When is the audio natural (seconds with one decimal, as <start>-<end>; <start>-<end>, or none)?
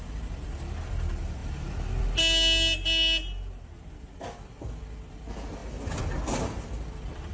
0.0-7.3